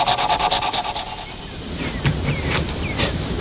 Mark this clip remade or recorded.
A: recorded